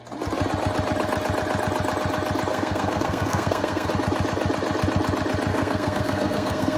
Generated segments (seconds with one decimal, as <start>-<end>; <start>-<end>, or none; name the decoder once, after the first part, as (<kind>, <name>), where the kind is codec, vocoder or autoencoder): 2.5-3.9 (codec, SNAC); 5.5-6.8